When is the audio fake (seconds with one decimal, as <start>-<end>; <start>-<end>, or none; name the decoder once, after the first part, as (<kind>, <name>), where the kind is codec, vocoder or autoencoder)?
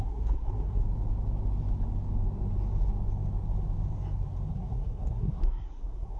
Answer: 0.0-0.8 (codec, SNAC); 4.5-6.2